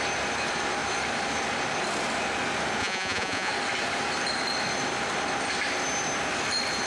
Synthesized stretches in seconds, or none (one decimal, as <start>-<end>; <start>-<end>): 2.8-3.5